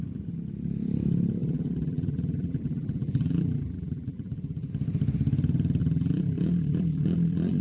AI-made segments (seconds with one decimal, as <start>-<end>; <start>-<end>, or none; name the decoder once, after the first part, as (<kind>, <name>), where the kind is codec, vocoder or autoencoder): 1.4-4.7 (vocoder, BigVGAN v2); 5.8-7.6